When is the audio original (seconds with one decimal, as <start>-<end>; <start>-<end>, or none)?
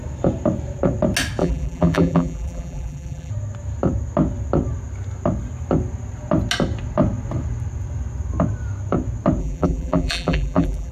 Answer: 0.0-1.4; 3.3-9.4